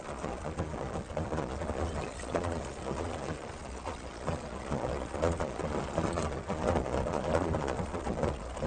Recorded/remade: remade